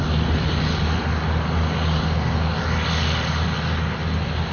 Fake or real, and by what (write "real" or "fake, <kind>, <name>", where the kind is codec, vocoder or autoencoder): real